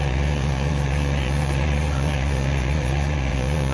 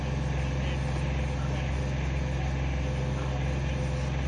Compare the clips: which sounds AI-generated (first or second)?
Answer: first